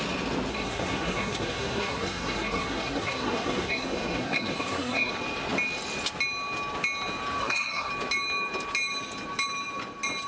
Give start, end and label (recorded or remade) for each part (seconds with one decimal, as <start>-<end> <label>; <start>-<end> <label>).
0.0-0.5 recorded; 0.5-5.1 remade; 5.1-7.4 recorded; 7.4-7.9 remade; 7.9-10.3 recorded